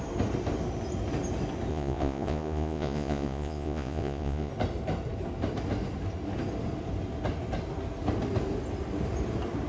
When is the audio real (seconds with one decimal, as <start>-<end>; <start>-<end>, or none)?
0.0-1.7; 4.5-9.7